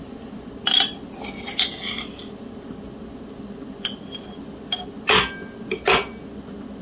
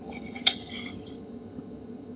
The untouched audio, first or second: first